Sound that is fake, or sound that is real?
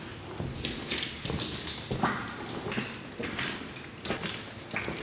real